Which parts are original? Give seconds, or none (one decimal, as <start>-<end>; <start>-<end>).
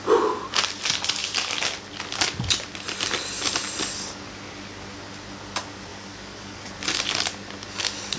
0.0-5.9; 6.7-8.2